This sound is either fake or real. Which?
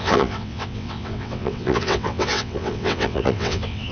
fake